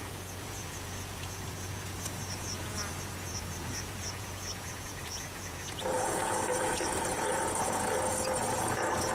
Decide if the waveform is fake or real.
fake